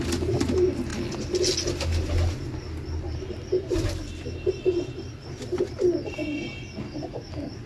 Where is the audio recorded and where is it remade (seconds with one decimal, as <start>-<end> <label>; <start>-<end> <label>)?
0.0-7.7 recorded